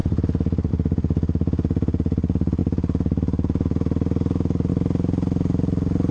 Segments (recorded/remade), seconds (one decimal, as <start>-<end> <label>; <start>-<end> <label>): 0.0-6.1 recorded

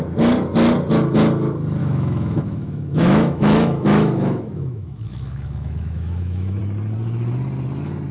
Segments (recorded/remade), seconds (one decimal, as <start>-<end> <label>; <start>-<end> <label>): 0.0-1.8 recorded; 1.8-6.6 remade; 6.6-8.1 recorded

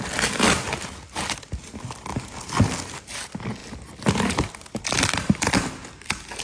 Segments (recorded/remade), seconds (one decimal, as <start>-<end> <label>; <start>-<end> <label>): 0.0-6.4 recorded

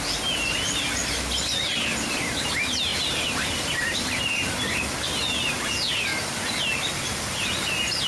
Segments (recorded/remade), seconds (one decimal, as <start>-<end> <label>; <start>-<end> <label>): 0.0-2.9 recorded; 2.9-4.6 remade; 4.6-8.1 recorded